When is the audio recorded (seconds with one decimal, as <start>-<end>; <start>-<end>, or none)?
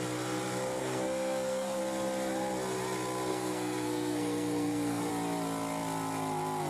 0.0-0.8; 1.8-3.3; 5.1-6.7